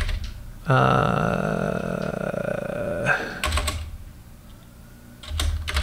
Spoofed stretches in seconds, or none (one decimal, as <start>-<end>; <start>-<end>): 1.0-2.1; 3.6-4.8